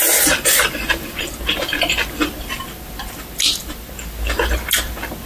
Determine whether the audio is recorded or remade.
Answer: recorded